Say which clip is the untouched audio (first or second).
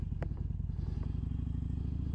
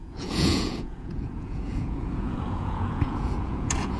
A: first